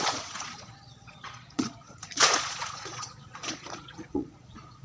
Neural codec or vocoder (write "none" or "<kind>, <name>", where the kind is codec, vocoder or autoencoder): vocoder, Vocos